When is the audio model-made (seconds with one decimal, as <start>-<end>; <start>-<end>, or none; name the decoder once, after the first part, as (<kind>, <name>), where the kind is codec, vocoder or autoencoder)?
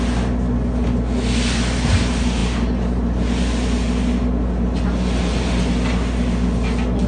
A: none